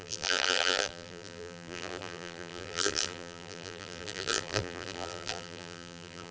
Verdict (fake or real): fake